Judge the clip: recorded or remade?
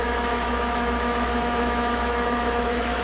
remade